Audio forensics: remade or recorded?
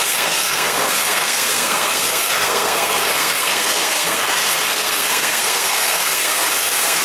remade